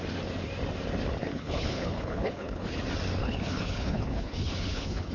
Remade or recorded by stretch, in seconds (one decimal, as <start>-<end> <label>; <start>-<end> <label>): 0.0-1.2 recorded; 1.2-2.8 remade; 2.8-3.2 recorded; 3.2-5.1 remade